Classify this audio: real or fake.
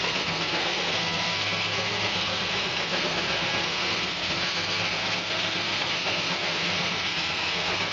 fake